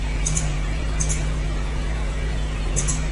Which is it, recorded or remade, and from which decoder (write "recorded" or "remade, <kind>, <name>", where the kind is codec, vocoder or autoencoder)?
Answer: remade, vocoder, Vocos